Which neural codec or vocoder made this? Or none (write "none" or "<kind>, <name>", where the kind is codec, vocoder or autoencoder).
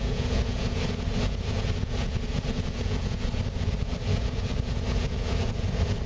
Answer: vocoder, Vocos